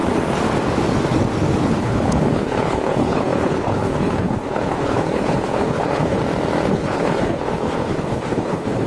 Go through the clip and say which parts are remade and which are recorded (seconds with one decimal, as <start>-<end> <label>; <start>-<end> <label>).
0.0-1.8 recorded; 1.8-6.2 remade; 6.2-6.7 recorded; 6.7-8.9 remade